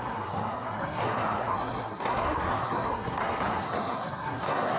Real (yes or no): no